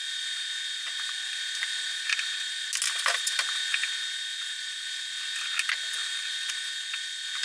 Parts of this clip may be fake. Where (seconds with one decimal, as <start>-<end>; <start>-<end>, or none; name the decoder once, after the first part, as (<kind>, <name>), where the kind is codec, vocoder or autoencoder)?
none